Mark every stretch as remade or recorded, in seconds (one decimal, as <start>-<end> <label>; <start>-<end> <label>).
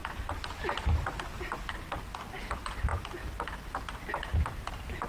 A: 0.0-2.3 recorded; 2.3-2.9 remade; 2.9-4.1 recorded; 4.1-5.1 remade